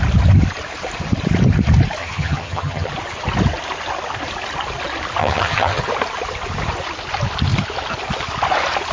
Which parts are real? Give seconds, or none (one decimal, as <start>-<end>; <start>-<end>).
0.0-2.0; 2.9-5.2; 5.8-8.9